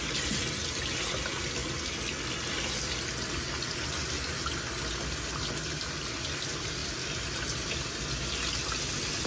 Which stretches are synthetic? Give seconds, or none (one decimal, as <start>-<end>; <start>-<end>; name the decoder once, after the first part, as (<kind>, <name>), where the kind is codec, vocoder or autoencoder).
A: 6.8-8.0 (vocoder, BigVGAN v2)